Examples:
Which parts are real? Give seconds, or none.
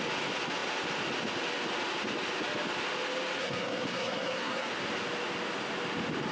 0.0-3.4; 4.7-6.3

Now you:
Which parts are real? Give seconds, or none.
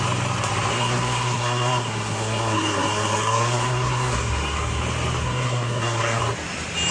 0.0-0.7; 4.8-5.2; 6.2-6.9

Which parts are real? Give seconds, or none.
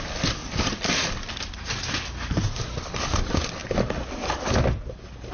0.0-5.3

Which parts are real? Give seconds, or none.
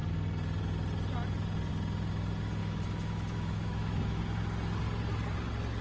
0.0-2.6; 4.2-5.8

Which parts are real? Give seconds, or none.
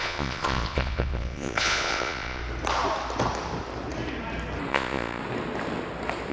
2.4-4.7; 5.2-6.3